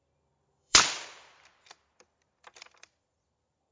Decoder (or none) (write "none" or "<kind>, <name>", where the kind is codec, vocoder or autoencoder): vocoder, BigVGAN v2